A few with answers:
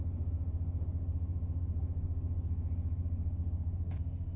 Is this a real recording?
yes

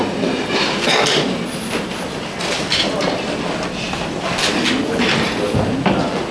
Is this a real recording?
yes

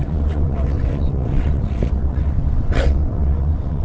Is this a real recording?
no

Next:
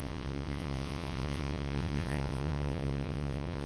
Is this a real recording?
no